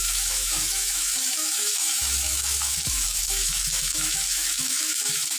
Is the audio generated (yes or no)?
yes